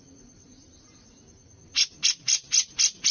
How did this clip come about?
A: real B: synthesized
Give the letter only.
A